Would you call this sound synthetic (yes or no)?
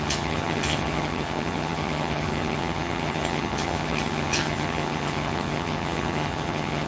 yes